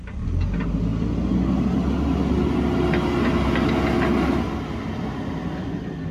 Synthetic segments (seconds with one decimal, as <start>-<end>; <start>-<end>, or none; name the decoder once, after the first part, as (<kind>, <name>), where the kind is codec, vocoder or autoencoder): none